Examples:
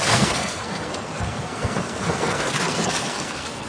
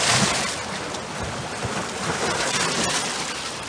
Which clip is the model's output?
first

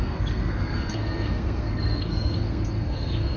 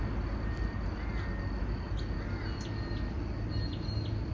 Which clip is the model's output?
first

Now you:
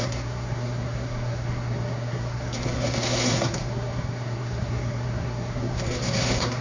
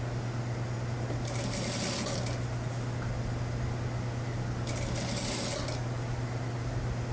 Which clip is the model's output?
first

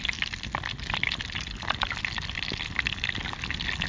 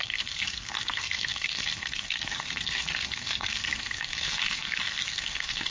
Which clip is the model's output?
second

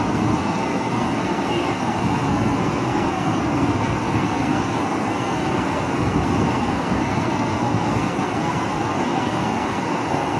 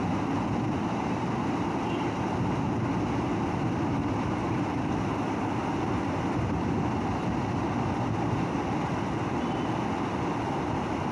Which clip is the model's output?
first